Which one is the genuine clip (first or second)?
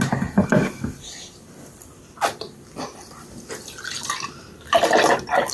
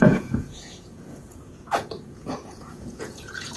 first